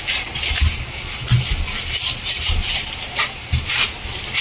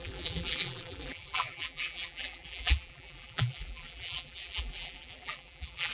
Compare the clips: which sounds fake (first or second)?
second